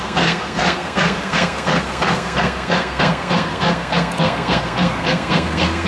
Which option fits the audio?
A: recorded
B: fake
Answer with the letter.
B